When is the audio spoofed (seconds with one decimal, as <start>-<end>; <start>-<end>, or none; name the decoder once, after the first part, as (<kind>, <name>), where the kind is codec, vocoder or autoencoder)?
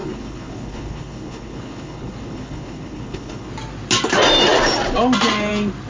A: 0.0-3.5 (codec, HILCodec)